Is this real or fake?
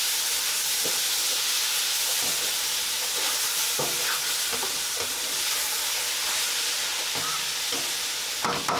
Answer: real